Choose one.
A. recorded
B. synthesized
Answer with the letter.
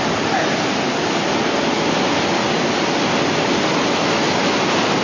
A